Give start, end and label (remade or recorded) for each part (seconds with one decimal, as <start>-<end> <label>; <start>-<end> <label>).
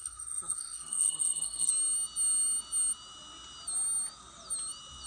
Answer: 0.0-1.7 remade; 1.7-5.1 recorded